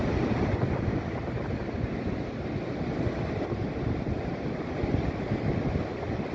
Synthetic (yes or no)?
no